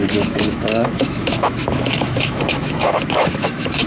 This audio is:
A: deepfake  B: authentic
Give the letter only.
A